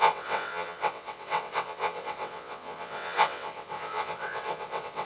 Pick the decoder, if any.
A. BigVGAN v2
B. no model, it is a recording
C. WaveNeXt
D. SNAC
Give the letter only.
C